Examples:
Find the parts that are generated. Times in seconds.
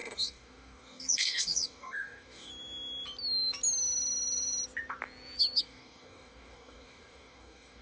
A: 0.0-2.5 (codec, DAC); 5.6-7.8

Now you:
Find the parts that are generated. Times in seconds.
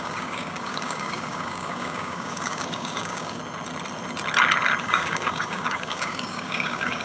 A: 0.0-3.4 (codec, DAC); 4.8-7.0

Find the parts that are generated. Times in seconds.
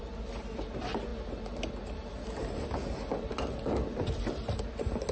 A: none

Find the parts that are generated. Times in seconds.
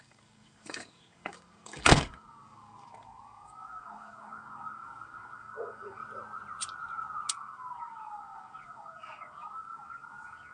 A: 0.0-6.0 (codec, DAC); 7.3-10.5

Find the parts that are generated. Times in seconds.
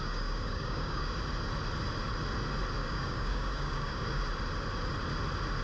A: 0.0-1.1 (codec, DAC); 2.8-4.2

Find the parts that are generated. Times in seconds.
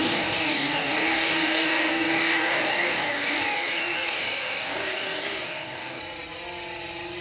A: 0.0-6.0 (codec, DAC)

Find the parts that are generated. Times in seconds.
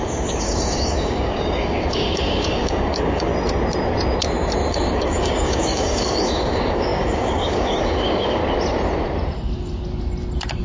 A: 0.0-3.3 (codec, DAC); 4.7-8.4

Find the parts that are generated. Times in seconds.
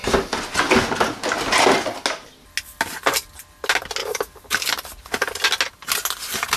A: 4.0-4.7 (codec, DAC)